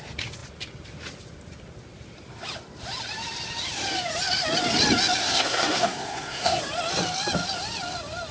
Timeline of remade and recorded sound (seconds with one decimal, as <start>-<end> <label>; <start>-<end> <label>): 0.0-5.2 recorded; 5.2-6.6 remade; 6.6-8.3 recorded